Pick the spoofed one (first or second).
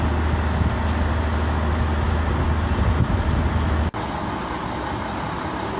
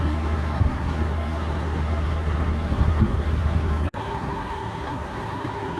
second